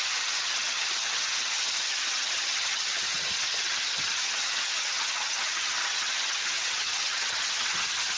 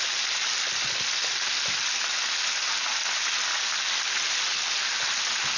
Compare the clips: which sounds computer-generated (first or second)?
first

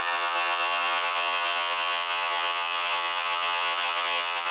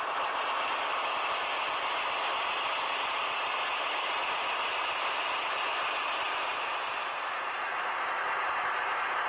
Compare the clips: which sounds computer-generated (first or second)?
first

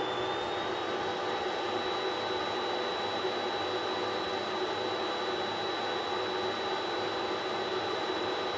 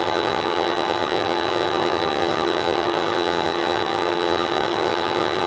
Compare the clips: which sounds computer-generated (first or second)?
second